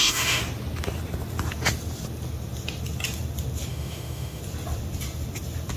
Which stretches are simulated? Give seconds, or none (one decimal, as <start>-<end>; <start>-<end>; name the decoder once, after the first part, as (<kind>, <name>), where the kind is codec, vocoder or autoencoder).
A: 0.0-0.4 (autoencoder, DAC-VAE); 3.7-4.4